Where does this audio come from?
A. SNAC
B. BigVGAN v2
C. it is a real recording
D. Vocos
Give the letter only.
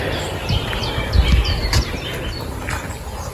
C